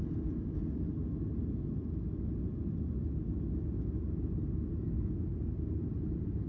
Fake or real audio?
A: real